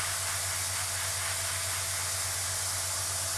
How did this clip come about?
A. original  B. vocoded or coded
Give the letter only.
A